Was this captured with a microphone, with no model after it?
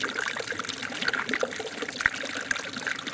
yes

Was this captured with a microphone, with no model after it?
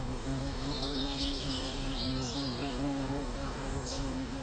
no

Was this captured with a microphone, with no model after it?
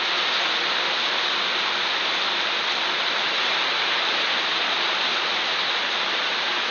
yes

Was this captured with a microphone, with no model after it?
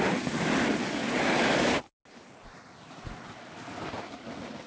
yes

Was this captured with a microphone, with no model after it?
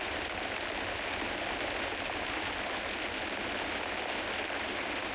yes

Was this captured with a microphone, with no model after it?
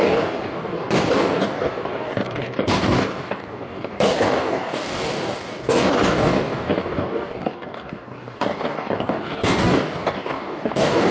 no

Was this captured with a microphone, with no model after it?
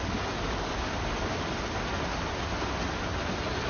yes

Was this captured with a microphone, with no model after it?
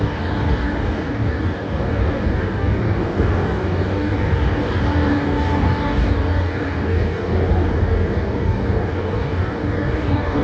no